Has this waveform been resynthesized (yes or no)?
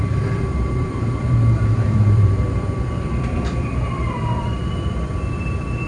yes